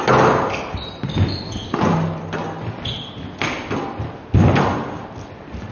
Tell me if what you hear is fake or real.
real